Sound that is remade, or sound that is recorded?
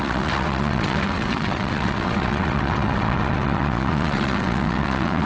remade